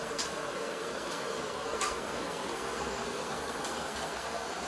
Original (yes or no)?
no